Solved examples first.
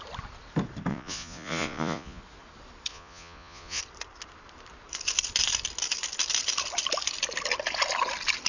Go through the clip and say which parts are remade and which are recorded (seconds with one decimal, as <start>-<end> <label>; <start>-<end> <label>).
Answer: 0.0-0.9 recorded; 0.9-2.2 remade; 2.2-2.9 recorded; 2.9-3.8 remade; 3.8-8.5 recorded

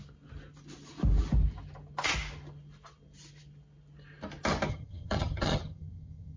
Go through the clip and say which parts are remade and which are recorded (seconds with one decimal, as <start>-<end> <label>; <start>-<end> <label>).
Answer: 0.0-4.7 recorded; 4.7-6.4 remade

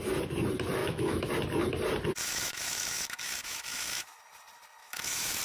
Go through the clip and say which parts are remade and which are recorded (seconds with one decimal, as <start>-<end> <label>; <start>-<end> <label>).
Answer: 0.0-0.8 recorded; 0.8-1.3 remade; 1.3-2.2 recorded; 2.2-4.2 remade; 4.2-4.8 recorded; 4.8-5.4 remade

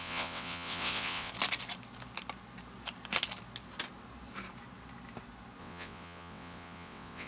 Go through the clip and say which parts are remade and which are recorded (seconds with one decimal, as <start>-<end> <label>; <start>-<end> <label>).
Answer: 0.0-1.3 remade; 1.3-5.6 recorded; 5.6-7.3 remade

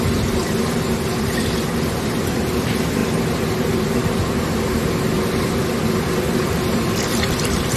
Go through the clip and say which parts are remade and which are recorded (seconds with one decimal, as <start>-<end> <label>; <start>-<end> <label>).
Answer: 0.0-3.0 remade; 3.0-3.9 recorded; 3.9-7.8 remade